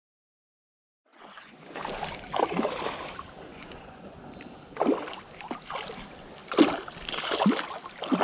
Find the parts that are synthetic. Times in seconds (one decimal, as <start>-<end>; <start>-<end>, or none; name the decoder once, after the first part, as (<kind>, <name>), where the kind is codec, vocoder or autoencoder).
1.1-1.8 (vocoder, Vocos); 3.5-4.2